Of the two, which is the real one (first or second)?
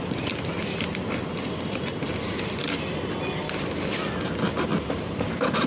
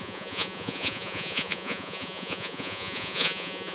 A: first